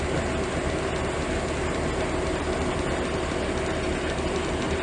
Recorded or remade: recorded